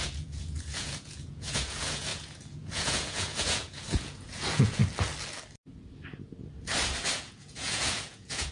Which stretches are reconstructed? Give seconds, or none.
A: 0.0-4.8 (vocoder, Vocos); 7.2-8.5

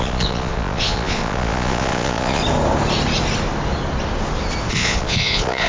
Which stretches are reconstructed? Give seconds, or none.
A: 0.0-2.4 (vocoder, Vocos); 4.7-5.7

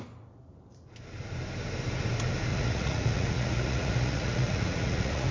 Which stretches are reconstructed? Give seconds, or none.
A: 2.5-5.3 (vocoder, Vocos)